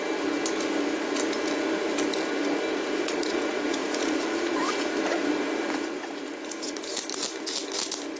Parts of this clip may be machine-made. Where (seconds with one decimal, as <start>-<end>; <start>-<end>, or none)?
2.7-6.8